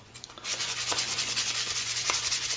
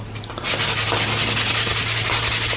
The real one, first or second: second